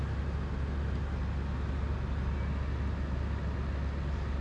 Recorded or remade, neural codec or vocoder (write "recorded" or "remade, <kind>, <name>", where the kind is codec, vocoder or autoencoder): recorded